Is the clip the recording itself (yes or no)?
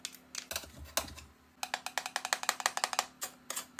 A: yes